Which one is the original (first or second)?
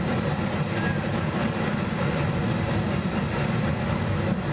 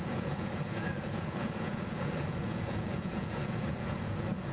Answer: first